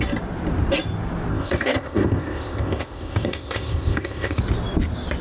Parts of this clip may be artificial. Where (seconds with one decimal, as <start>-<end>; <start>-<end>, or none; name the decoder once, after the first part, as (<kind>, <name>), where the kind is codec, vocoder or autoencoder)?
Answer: 1.3-4.4 (codec, ZipCodec)